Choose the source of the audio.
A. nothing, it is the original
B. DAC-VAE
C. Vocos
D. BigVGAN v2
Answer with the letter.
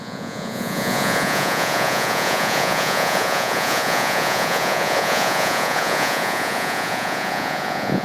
C